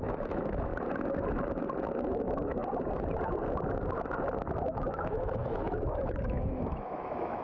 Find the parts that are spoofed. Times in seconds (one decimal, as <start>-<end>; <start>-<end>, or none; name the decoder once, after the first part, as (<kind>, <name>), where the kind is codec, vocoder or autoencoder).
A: 0.0-0.7 (autoencoder, DAC-VAE); 2.0-2.6; 4.6-7.4